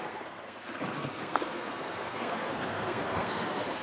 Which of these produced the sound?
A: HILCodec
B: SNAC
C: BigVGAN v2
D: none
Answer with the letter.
B